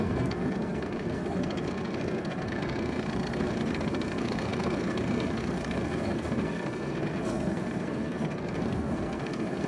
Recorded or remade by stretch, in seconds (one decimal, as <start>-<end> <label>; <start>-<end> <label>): 0.0-9.7 remade